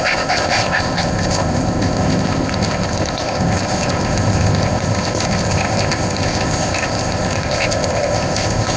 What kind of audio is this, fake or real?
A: fake